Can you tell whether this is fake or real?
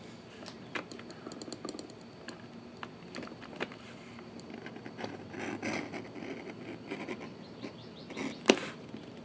real